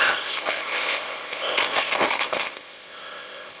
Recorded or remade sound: remade